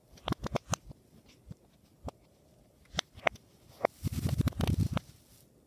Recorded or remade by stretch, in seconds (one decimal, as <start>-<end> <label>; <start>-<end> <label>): 0.0-5.7 recorded